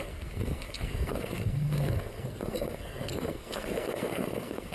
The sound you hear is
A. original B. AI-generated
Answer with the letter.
B